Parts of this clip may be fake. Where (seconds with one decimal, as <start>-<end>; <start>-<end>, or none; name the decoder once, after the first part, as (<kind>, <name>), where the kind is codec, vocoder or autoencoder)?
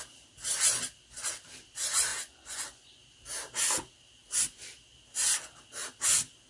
2.1-3.0 (vocoder, Vocos)